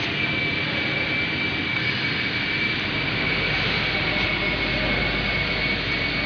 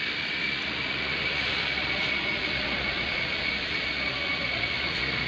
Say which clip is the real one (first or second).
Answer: first